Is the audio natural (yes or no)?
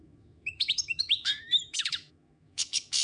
no